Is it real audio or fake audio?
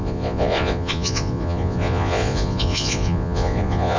fake